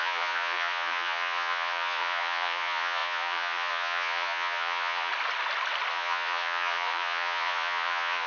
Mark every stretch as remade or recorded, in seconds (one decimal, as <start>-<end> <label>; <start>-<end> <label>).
0.0-5.1 remade; 5.1-5.9 recorded; 5.9-8.3 remade